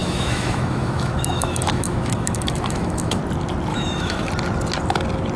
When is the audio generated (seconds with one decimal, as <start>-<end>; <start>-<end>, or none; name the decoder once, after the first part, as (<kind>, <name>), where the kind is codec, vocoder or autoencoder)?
0.0-3.2 (autoencoder, DAC-VAE); 3.7-4.3